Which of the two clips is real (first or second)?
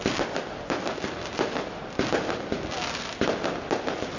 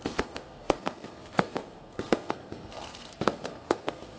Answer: first